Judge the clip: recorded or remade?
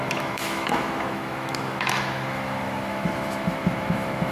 remade